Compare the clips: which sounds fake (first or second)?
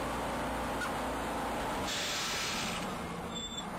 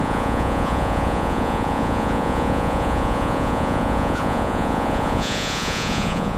second